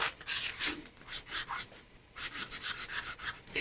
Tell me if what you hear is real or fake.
fake